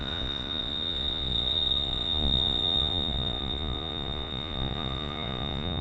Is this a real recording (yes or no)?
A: no